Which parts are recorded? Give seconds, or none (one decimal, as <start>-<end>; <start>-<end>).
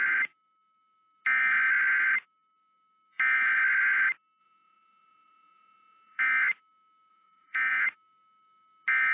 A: 0.0-4.4; 6.2-7.1; 7.9-9.1